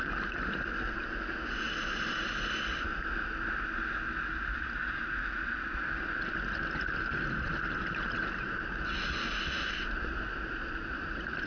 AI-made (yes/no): no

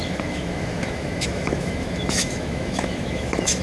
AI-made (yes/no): yes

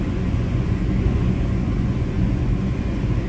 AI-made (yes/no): yes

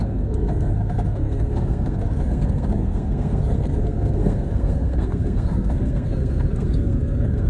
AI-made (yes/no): yes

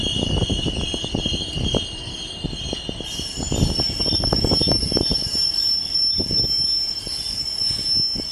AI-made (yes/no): no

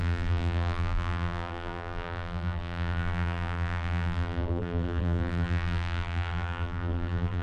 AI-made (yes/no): yes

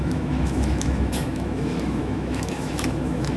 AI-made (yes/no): yes